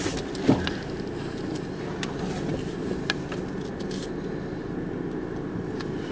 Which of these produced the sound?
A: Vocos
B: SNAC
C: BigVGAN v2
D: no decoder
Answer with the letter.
D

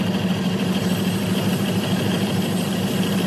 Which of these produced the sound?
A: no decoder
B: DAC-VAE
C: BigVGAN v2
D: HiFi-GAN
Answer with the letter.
A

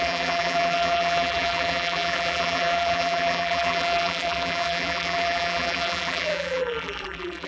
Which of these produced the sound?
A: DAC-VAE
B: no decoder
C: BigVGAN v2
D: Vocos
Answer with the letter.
C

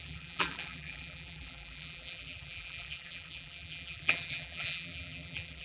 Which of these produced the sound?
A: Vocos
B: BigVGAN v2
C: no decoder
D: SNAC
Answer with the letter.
B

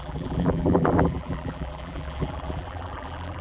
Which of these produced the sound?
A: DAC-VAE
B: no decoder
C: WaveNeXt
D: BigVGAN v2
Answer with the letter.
D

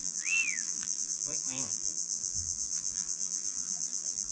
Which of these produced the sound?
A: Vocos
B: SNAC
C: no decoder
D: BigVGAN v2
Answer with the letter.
D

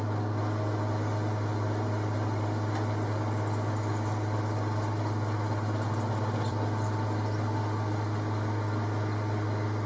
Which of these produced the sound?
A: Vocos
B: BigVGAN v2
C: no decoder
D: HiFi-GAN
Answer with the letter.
C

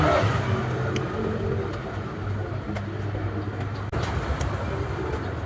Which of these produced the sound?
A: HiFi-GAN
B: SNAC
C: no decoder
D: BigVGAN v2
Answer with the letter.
C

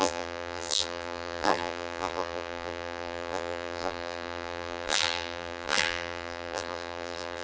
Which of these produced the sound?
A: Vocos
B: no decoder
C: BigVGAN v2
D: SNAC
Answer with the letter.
C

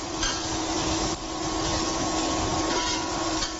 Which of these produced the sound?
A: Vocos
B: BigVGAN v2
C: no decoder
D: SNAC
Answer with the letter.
C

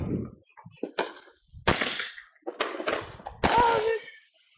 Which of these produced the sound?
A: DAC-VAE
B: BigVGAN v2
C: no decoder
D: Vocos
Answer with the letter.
C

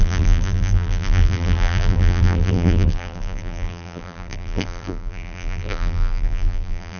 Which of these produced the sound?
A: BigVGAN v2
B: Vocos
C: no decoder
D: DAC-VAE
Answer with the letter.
A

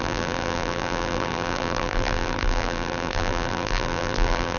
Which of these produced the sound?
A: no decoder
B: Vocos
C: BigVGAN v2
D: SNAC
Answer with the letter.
C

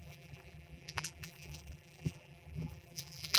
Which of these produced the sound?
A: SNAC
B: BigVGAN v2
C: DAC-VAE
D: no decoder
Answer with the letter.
B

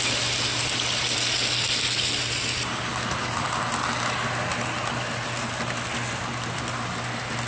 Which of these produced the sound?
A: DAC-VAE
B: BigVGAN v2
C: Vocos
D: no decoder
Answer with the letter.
D